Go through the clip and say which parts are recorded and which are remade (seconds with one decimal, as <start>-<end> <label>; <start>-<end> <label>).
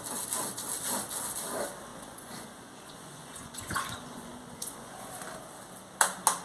0.0-1.9 recorded; 1.9-5.1 remade; 5.1-6.4 recorded